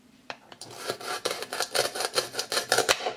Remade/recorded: remade